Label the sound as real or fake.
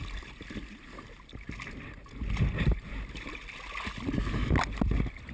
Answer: real